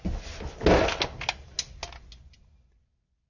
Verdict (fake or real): real